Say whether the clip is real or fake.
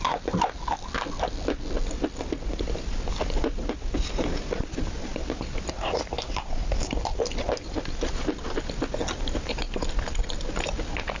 real